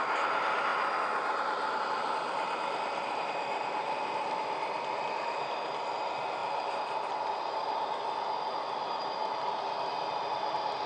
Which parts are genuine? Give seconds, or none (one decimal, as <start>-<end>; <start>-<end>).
0.0-10.9